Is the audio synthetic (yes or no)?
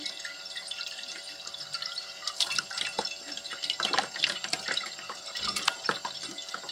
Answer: yes